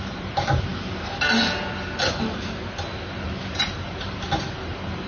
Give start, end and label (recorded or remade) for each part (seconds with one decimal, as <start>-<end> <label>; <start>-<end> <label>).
0.0-0.7 remade; 0.7-3.5 recorded; 3.5-5.1 remade